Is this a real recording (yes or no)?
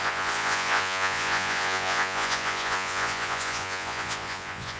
no